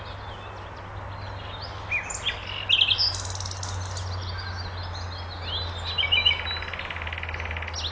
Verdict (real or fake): real